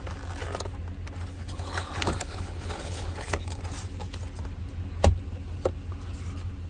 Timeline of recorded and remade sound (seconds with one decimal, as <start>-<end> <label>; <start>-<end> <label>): 0.0-1.3 recorded; 1.3-3.6 remade; 3.6-6.7 recorded